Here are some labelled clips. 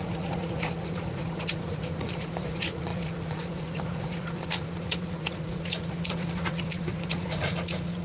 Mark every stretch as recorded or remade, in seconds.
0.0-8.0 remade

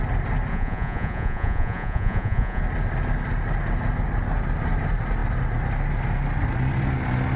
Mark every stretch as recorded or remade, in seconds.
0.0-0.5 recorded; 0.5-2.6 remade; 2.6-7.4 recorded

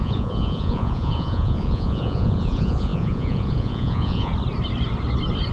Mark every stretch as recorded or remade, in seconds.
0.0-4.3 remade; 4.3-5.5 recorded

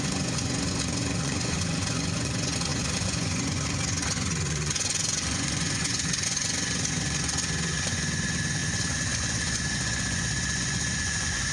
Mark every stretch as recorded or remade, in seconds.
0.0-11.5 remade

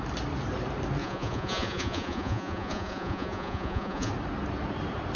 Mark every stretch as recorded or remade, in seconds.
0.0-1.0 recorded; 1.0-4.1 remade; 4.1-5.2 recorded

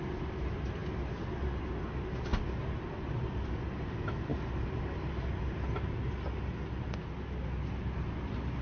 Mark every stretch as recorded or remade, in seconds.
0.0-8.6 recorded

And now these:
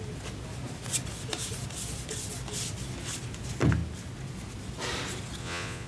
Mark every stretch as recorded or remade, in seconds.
0.0-5.4 recorded; 5.4-5.9 remade

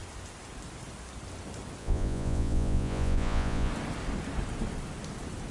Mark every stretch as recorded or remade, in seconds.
0.0-1.8 recorded; 1.8-3.7 remade; 3.7-5.5 recorded